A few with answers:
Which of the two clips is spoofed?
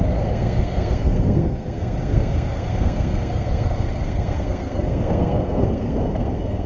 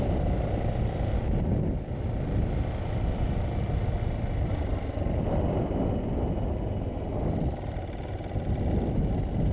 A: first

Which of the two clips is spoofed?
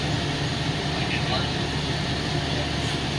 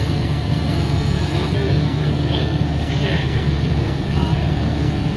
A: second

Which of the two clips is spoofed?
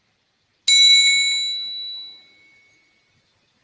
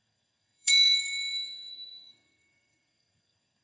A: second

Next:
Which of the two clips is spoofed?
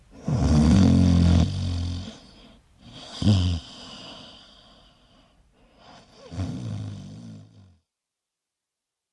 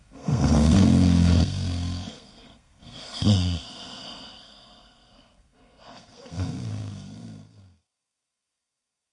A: second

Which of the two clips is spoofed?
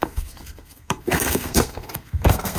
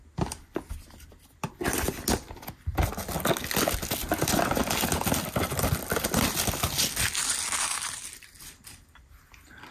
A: first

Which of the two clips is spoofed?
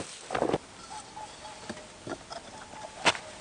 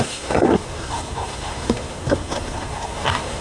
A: second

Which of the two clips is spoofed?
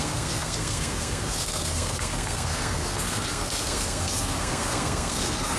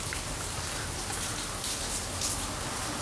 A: first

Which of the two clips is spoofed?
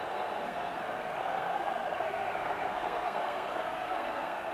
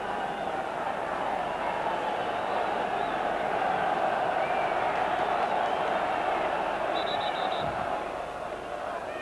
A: first